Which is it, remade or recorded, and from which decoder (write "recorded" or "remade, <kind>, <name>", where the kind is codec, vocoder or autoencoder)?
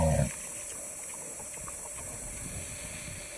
recorded